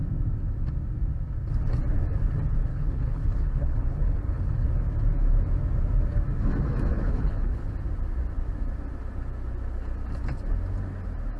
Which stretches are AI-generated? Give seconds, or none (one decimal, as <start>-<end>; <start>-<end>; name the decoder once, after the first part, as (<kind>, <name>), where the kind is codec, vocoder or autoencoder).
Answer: 2.7-4.7 (codec, HILCodec); 6.9-7.7